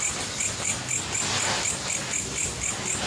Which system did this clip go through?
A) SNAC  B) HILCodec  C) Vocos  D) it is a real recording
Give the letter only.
D